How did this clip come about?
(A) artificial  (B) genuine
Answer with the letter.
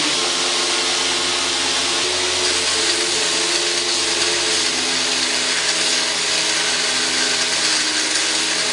B